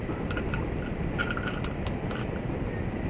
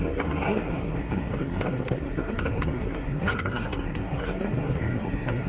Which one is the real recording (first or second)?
first